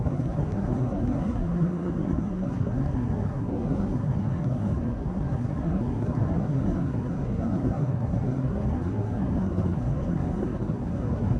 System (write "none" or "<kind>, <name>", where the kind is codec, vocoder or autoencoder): codec, SNAC